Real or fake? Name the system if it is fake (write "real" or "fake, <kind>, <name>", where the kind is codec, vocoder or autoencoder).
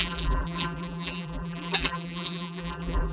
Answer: fake, vocoder, BigVGAN v2